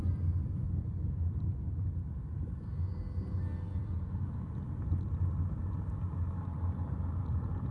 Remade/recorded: recorded